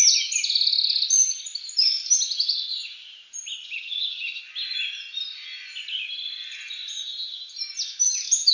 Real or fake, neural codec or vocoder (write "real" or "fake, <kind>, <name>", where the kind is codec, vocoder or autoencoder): real